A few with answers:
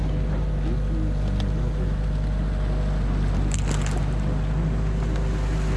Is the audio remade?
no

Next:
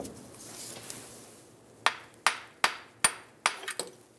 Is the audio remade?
no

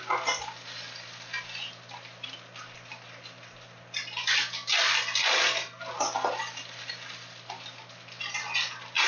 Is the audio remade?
no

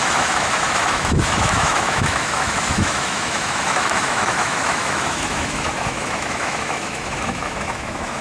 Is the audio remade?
yes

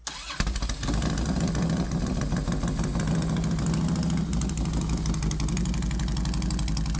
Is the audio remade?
no